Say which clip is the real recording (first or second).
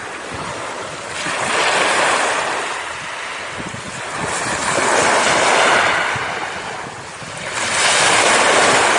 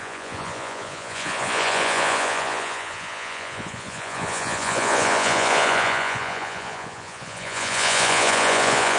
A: first